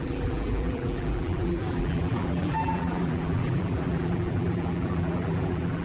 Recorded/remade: remade